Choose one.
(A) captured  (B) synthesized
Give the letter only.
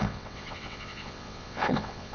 B